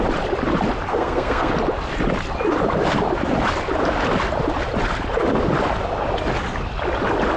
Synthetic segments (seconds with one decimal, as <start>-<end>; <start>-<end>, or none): 0.9-1.5